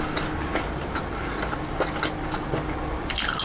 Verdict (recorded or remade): recorded